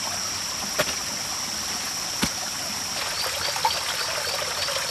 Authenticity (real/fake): real